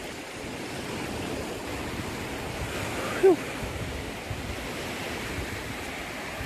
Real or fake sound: real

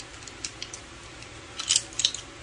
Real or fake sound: real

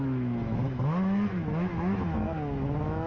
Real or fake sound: fake